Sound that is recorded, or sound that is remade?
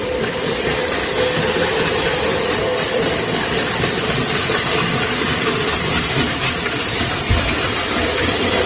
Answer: recorded